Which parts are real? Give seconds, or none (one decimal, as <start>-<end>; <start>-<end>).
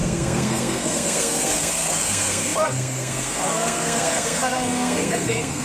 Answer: none